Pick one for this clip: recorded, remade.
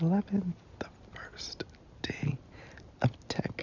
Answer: recorded